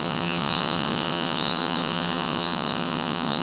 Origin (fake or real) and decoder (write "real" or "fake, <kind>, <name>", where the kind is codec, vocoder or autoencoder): fake, vocoder, WaveNeXt